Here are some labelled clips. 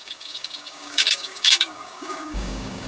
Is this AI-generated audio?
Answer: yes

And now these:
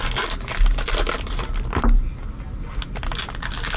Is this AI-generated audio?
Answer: no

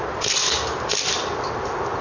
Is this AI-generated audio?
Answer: no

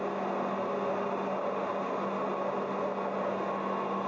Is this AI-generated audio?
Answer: no